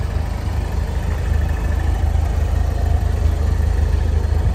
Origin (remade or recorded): recorded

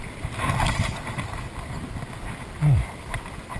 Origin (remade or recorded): recorded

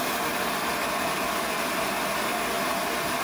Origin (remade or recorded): recorded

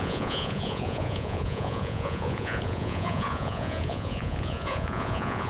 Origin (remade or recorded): remade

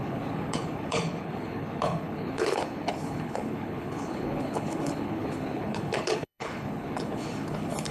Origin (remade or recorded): remade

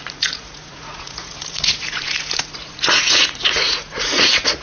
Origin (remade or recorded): remade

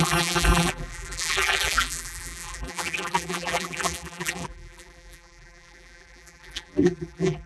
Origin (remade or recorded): remade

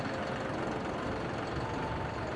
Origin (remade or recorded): recorded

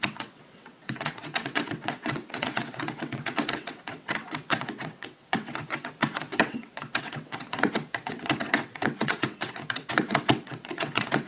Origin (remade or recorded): remade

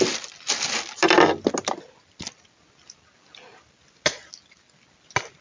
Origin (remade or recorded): recorded